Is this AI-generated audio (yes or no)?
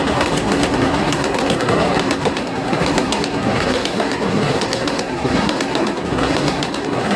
yes